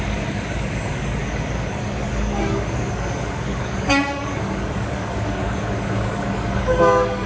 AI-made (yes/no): yes